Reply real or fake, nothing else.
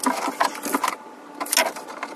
real